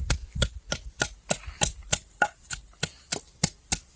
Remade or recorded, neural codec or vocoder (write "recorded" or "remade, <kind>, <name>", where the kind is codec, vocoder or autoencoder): recorded